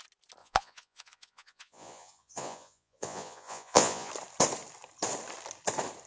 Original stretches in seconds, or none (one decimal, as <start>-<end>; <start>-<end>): 0.0-0.4; 4.1-6.1